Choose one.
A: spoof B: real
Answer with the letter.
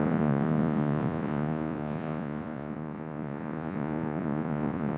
A